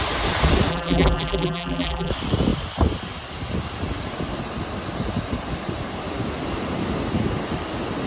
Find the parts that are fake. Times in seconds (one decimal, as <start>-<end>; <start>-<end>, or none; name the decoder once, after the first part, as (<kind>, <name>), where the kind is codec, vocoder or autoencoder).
0.7-2.1 (vocoder, BigVGAN v2)